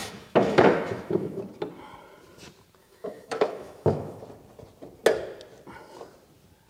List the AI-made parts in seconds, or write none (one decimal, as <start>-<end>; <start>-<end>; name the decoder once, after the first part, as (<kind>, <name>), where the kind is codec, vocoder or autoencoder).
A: 0.0-1.4 (autoencoder, DAC-VAE); 2.8-4.2